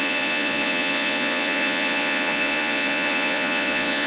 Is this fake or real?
fake